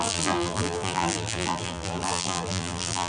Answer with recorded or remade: remade